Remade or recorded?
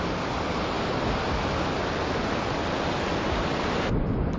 recorded